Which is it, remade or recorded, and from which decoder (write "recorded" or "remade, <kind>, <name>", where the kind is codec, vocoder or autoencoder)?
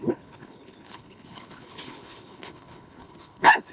remade, codec, HILCodec